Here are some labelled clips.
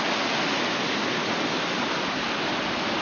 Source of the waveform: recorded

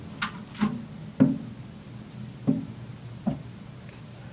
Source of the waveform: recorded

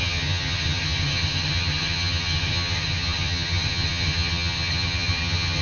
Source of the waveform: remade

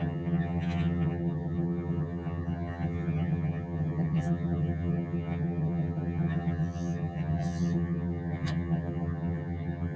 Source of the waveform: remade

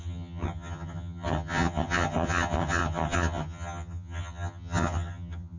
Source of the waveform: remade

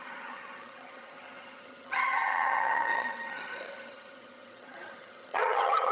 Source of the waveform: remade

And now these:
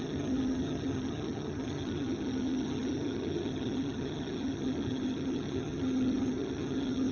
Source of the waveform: remade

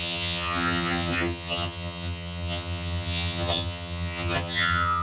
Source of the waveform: remade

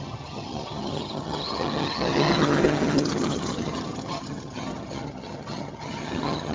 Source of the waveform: remade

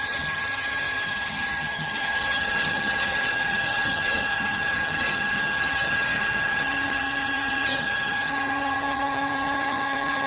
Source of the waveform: remade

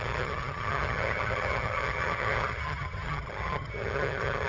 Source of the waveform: remade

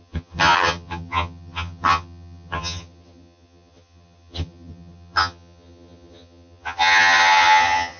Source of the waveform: remade